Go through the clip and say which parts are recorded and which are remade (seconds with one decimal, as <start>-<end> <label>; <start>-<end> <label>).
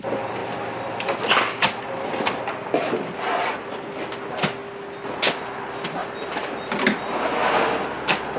0.0-0.4 recorded; 0.4-2.4 remade; 2.4-6.0 recorded; 6.0-6.9 remade; 6.9-8.4 recorded